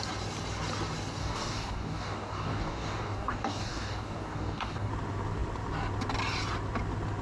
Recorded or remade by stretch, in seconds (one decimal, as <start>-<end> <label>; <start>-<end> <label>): 0.0-1.2 recorded; 1.2-4.9 remade; 4.9-7.2 recorded